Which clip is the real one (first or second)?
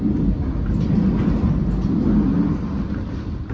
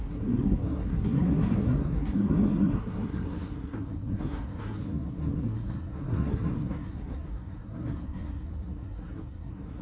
first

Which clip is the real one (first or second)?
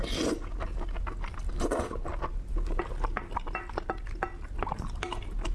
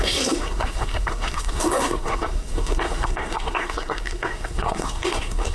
first